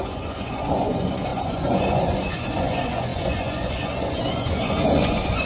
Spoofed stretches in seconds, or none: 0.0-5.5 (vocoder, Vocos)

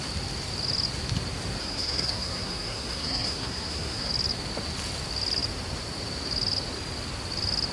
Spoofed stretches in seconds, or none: 1.6-4.1 (codec, SNAC)

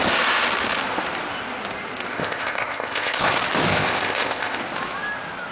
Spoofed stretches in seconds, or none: 2.1-3.3 (codec, ZipCodec); 3.7-4.6

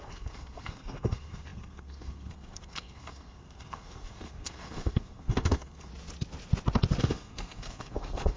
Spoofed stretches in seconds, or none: 0.0-5.9 (codec, SNAC); 7.0-8.4

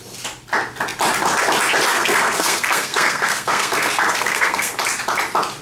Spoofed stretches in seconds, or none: 1.9-4.7 (codec, SNAC)

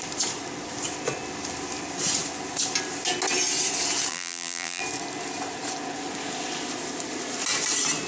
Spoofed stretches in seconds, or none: 4.1-4.8 (vocoder, BigVGAN v2)